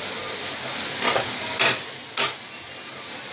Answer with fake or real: real